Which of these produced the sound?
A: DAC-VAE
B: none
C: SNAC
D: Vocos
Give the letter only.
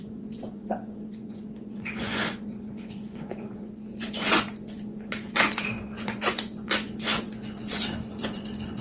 D